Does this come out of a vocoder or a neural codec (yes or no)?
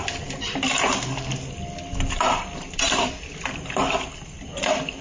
no